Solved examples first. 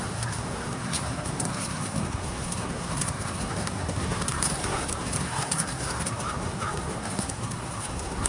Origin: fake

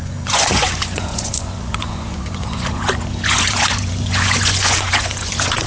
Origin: fake